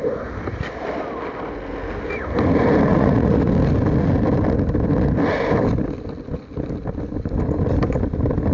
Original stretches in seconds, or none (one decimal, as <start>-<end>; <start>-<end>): 0.0-2.9; 3.5-8.5